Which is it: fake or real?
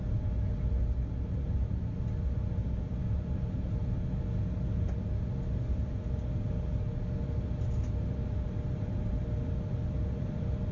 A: real